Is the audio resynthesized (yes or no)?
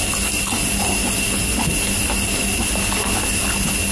no